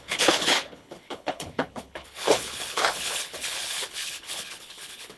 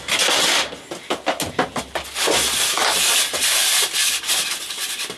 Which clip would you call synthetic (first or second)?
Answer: first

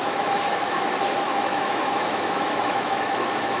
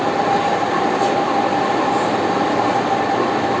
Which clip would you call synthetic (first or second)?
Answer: first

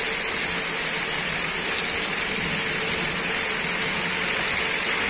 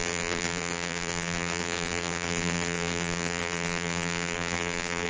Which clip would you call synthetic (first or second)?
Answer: second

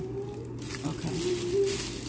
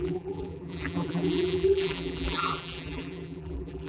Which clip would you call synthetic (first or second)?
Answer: second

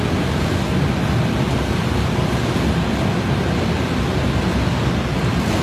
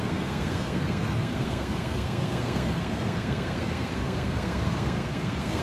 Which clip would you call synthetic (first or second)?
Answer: second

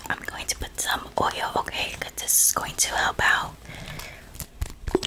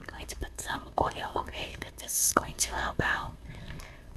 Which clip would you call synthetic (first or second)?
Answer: second